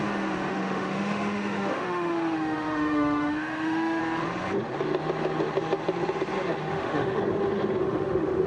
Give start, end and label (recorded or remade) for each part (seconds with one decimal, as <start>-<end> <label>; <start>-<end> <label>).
0.0-0.5 recorded; 0.5-4.0 remade; 4.0-6.7 recorded; 6.7-7.2 remade; 7.2-7.8 recorded; 7.8-8.5 remade